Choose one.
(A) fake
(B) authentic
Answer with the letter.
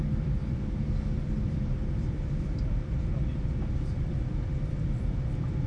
A